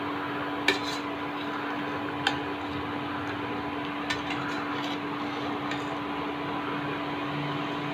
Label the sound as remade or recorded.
recorded